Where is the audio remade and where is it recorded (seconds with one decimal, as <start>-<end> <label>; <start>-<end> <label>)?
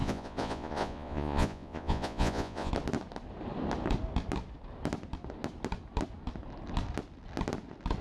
0.0-2.7 remade; 2.7-8.0 recorded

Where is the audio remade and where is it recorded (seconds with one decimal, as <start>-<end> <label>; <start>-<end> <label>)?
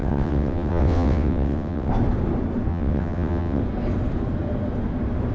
0.0-1.9 remade; 1.9-2.7 recorded; 2.7-3.6 remade; 3.6-5.3 recorded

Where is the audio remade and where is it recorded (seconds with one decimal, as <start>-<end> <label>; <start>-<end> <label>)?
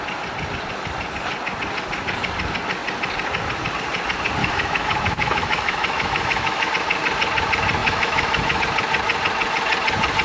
0.0-4.4 recorded; 4.4-6.7 remade; 6.7-7.8 recorded; 7.8-8.6 remade; 8.6-10.2 recorded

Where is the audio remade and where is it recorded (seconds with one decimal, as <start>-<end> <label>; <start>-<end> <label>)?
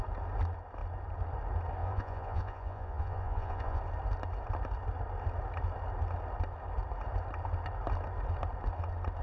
0.0-1.8 recorded; 1.8-3.8 remade; 3.8-9.2 recorded